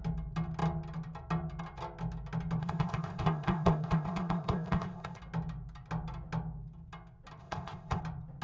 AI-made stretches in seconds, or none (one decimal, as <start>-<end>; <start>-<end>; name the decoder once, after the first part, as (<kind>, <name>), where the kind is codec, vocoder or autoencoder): 2.6-5.2 (codec, ZipCodec); 7.4-8.0